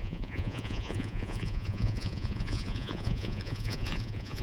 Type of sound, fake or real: fake